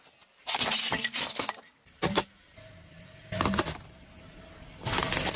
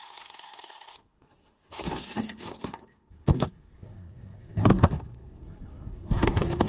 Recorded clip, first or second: first